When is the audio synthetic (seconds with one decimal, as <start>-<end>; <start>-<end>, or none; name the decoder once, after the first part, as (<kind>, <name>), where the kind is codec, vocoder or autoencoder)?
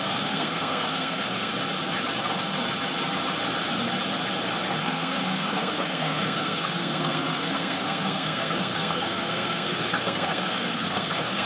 0.0-1.5 (codec, SNAC); 4.8-11.5